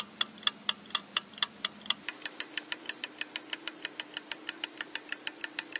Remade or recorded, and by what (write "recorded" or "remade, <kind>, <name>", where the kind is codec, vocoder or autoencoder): recorded